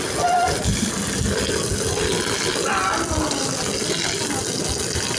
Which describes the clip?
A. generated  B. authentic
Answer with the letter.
B